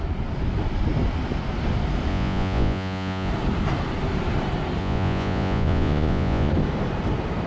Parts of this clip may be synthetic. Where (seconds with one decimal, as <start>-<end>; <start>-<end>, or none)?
2.1-3.3; 4.8-6.5